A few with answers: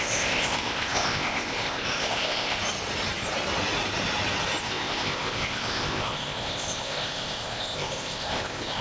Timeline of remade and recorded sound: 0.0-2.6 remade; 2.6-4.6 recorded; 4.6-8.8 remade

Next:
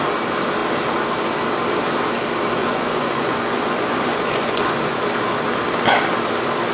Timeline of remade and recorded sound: 0.0-2.6 recorded; 2.6-5.0 remade; 5.0-6.7 recorded